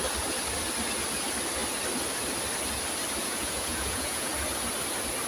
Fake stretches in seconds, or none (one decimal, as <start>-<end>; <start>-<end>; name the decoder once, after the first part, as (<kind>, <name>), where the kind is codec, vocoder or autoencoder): 3.2-4.3 (vocoder, Vocos)